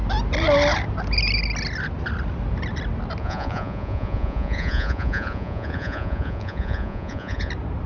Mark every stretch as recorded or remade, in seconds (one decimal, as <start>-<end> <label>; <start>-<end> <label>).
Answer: 0.0-3.2 recorded; 3.2-7.5 remade; 7.5-7.9 recorded